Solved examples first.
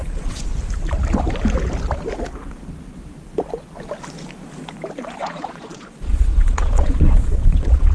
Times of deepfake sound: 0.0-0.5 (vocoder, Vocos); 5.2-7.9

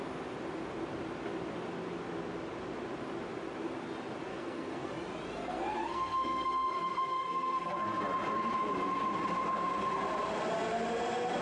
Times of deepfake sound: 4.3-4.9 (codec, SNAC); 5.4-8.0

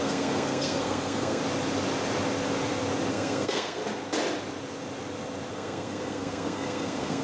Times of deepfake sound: 0.0-1.4 (codec, SNAC); 3.1-3.8; 5.5-7.2

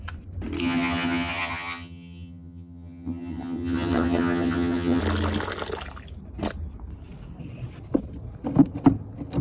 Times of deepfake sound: 0.6-5.0 (vocoder, HiFi-GAN)